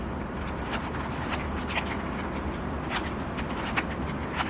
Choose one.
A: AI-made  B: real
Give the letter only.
B